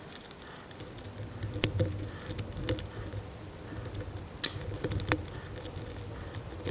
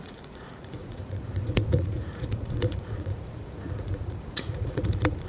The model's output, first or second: second